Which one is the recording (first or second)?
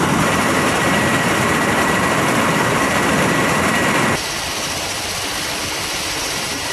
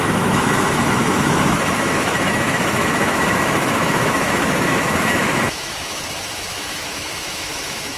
first